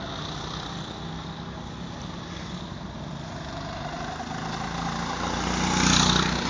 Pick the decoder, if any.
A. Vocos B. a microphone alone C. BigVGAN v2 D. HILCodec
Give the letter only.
B